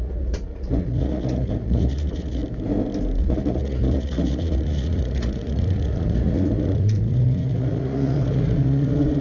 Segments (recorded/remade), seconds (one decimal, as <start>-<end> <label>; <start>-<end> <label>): 0.0-2.4 remade; 2.4-3.2 recorded; 3.2-9.2 remade